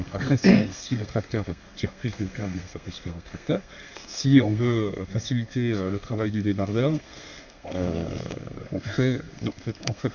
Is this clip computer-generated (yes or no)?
yes